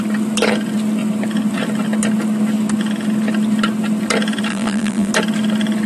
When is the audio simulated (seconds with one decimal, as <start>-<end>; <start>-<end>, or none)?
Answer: 4.5-5.1